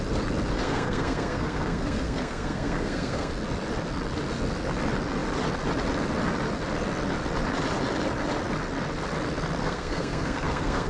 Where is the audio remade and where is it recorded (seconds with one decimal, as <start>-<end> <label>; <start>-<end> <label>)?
0.0-0.6 recorded; 0.6-3.3 remade; 3.3-9.6 recorded; 9.6-10.9 remade